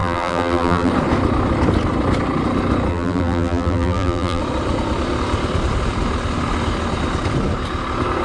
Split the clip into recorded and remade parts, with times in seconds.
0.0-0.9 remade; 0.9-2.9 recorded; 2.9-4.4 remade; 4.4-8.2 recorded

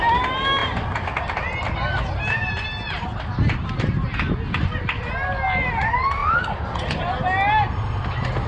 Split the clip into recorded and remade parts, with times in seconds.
0.0-8.5 recorded

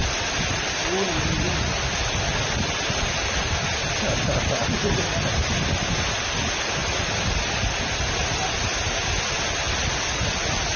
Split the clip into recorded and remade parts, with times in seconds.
0.0-1.8 remade; 1.8-6.8 recorded; 6.8-8.6 remade; 8.6-10.8 recorded

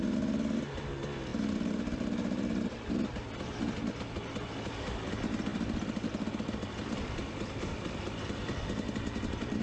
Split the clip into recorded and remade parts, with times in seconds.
0.0-1.3 recorded; 1.3-2.9 remade; 2.9-5.5 recorded; 5.5-8.3 remade; 8.3-9.6 recorded

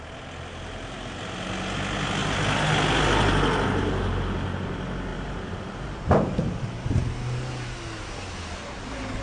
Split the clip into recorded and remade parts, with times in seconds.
0.0-5.1 recorded; 5.1-7.0 remade; 7.0-9.2 recorded

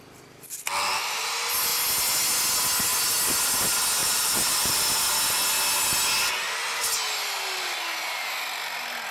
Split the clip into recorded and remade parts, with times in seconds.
0.0-4.0 recorded; 4.0-4.8 remade; 4.8-9.1 recorded

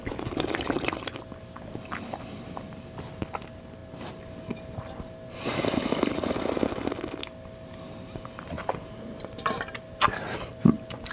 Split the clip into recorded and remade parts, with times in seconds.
0.0-11.1 remade